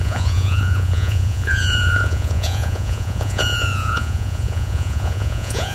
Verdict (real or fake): fake